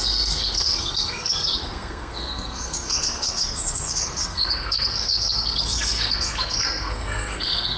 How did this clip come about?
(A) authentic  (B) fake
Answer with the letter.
B